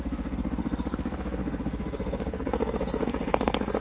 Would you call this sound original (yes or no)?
no